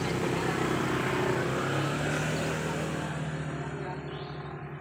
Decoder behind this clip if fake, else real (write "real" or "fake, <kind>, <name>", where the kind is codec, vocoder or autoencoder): real